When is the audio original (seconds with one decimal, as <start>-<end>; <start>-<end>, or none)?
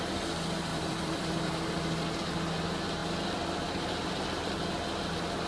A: 0.0-0.7; 1.5-3.0; 4.7-5.5